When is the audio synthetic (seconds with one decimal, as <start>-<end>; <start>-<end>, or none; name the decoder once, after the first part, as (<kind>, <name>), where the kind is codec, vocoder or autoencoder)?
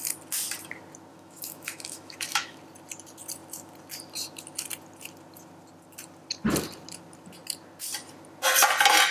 1.1-2.6 (autoencoder, DAC-VAE)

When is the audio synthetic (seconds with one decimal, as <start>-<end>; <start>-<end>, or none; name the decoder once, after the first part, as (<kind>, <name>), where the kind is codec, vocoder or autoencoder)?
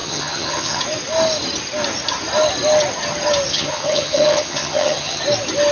0.0-0.8 (vocoder, HiFi-GAN); 3.5-5.2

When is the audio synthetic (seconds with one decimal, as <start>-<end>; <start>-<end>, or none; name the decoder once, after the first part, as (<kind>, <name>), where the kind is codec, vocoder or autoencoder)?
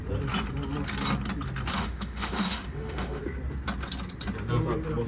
1.7-3.2 (autoencoder, DAC-VAE)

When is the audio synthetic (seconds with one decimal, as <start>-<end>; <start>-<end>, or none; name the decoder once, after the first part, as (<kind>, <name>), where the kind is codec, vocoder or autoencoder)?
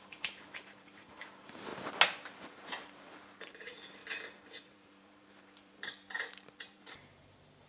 0.0-1.7 (vocoder, BigVGAN v2); 2.4-4.0; 4.6-7.7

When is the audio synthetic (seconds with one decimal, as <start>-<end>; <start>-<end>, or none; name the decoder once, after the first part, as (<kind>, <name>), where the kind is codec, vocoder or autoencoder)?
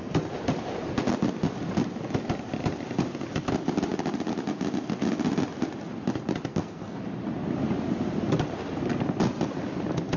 6.5-7.0 (codec, SNAC)